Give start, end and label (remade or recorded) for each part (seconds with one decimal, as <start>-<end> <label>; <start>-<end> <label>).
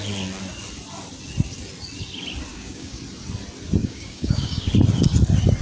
0.0-2.5 recorded; 2.5-3.0 remade; 3.0-3.8 recorded; 3.8-4.7 remade; 4.7-5.6 recorded